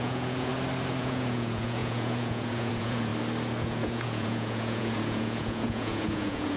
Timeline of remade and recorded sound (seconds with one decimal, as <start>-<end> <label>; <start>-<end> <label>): 0.0-0.5 remade; 0.5-1.0 recorded; 1.0-3.1 remade; 3.1-3.6 recorded; 3.6-6.6 remade

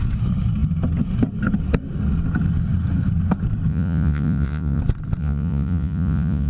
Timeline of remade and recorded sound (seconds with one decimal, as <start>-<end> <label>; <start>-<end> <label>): 0.0-3.7 recorded; 3.7-4.8 remade; 4.8-5.2 recorded; 5.2-6.5 remade

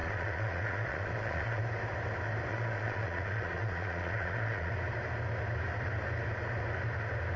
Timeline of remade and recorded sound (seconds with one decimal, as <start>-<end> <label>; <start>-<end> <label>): 0.0-1.6 remade; 1.6-2.5 recorded; 2.5-4.7 remade; 4.7-7.4 recorded

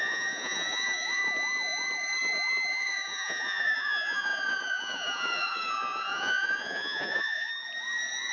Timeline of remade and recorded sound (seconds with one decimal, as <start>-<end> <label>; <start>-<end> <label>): 0.0-1.2 remade; 1.2-2.7 recorded; 2.7-7.5 remade; 7.5-8.3 recorded

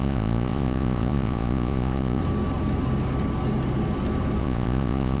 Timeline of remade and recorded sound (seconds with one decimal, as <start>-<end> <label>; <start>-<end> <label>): 0.0-2.2 remade; 2.2-4.4 recorded; 4.4-5.2 remade